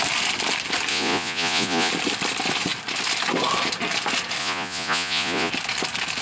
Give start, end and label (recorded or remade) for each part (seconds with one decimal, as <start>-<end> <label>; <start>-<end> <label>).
0.0-0.9 recorded; 0.9-1.9 remade; 1.9-4.4 recorded; 4.4-5.5 remade; 5.5-6.2 recorded